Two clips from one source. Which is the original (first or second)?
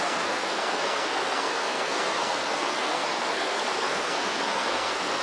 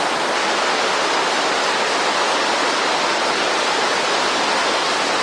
second